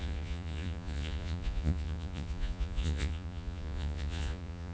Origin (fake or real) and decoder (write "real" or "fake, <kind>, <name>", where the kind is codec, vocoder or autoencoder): fake, vocoder, Vocos